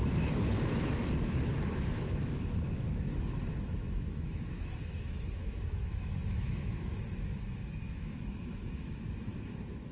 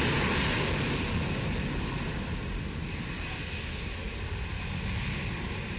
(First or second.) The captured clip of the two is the second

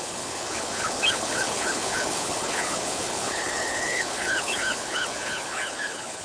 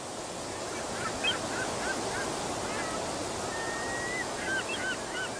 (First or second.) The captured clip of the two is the second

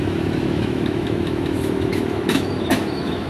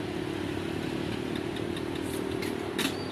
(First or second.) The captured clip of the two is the second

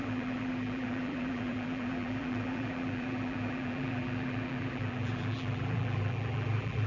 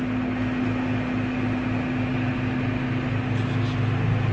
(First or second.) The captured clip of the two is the second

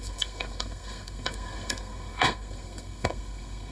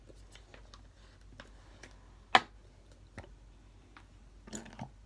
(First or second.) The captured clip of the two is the second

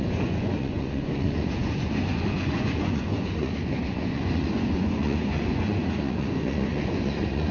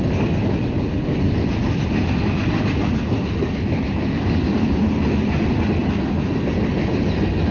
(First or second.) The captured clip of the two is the second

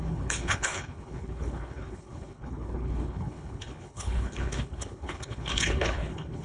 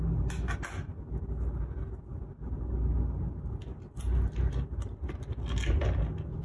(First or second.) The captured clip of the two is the second